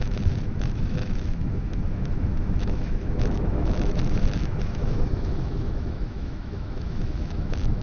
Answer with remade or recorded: remade